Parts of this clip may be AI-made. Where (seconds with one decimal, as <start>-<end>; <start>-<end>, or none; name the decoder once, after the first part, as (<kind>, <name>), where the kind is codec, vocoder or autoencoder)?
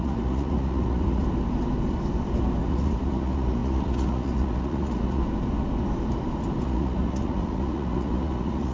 0.0-1.2 (vocoder, Vocos); 2.6-5.2; 6.6-8.7